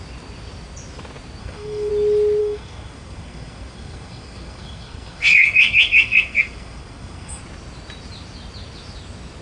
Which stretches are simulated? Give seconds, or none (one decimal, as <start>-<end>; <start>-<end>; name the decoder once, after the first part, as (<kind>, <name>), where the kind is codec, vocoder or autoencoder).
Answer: 1.4-1.9 (codec, SNAC); 2.4-7.4